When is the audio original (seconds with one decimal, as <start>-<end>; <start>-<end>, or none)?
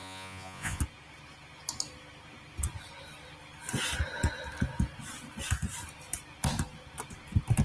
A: 0.8-7.6